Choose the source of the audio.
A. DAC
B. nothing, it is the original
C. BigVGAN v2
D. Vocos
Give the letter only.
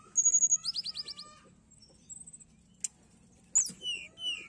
B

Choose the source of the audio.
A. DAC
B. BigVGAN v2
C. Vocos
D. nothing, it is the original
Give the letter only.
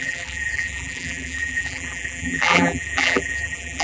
B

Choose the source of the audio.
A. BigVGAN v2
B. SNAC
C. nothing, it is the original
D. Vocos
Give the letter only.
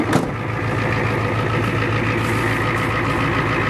C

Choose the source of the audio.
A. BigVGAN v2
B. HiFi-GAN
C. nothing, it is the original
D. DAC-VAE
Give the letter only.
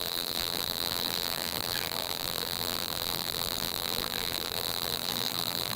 A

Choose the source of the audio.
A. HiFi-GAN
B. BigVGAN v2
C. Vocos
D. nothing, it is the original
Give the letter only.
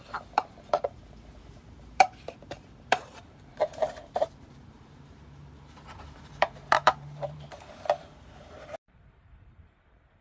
B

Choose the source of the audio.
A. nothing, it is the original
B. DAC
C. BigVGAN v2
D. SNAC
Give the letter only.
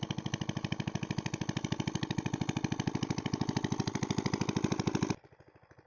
A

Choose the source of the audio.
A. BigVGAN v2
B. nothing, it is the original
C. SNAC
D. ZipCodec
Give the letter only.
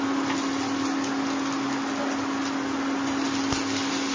B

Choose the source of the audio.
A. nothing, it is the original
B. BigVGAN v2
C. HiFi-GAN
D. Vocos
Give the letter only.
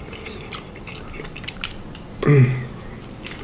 B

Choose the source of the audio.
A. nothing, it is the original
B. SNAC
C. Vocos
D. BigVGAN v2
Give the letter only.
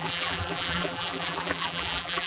D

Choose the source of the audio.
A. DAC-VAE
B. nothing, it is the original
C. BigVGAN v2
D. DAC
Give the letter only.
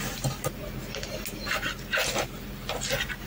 B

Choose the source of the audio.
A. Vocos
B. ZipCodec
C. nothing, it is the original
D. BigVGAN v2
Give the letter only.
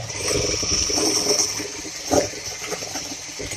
D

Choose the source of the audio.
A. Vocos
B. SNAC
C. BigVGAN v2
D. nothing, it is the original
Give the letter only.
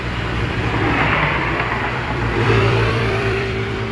C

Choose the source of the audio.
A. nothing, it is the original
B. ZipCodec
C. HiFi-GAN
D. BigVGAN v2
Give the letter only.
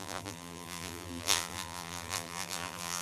D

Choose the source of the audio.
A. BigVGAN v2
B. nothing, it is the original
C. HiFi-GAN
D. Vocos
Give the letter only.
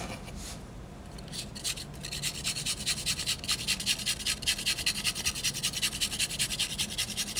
B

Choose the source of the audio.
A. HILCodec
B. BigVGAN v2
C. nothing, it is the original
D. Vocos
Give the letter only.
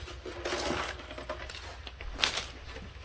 C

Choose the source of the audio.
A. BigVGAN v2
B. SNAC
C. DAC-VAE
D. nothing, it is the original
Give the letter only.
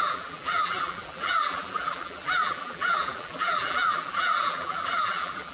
A